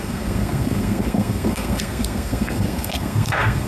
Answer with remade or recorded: remade